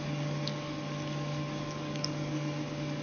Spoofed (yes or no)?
yes